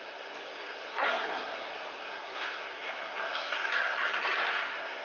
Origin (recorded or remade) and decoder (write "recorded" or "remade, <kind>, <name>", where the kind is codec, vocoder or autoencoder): remade, codec, SNAC